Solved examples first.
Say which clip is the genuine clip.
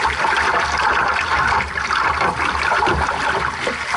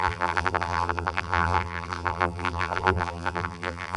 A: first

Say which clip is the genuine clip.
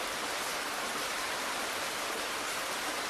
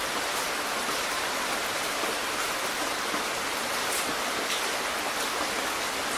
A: second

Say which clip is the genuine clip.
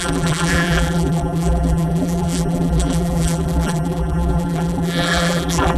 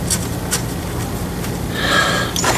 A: second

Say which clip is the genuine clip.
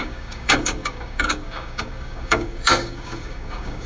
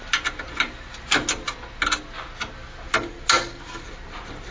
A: second